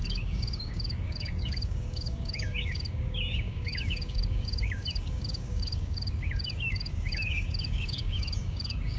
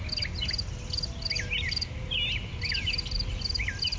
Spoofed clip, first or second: first